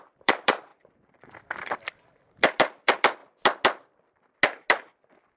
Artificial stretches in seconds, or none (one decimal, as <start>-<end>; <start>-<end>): 0.0-0.7; 2.3-3.2